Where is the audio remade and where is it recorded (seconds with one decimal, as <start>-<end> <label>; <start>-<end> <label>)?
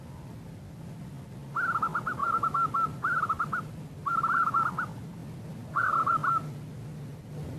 0.0-7.6 recorded